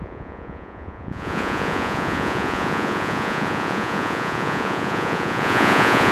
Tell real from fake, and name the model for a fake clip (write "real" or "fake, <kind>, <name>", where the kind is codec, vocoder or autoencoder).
fake, vocoder, Vocos